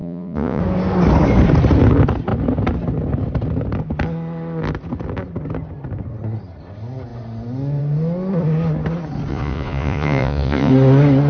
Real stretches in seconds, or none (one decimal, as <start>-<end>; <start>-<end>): 0.6-9.3; 10.7-11.3